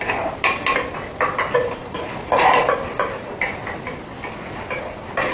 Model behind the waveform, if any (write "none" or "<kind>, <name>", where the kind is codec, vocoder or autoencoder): none